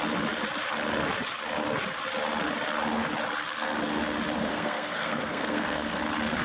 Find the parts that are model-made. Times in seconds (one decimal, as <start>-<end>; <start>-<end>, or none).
4.5-6.0